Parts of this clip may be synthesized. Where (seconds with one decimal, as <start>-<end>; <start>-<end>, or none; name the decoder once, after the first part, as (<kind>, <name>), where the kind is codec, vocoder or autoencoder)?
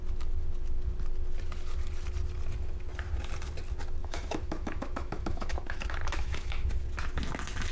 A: 4.0-6.7 (autoencoder, DAC-VAE)